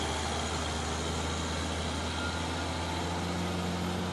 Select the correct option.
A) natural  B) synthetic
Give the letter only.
A